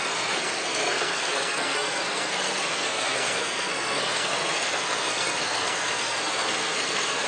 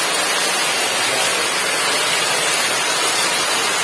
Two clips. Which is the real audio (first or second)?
second